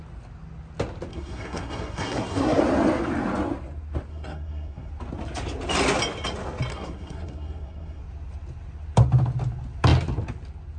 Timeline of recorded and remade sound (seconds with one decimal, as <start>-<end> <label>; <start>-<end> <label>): 0.0-1.1 recorded; 1.1-2.6 remade; 2.6-4.1 recorded; 4.1-4.9 remade; 4.9-6.7 recorded; 6.7-8.0 remade; 8.0-10.8 recorded